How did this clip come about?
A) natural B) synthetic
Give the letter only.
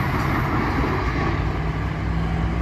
A